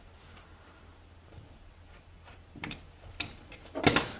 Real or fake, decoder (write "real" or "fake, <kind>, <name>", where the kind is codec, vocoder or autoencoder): fake, vocoder, BigVGAN v2